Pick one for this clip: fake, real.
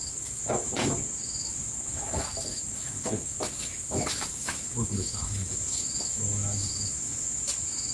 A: fake